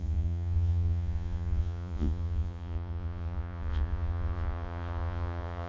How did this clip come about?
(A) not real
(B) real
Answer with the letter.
A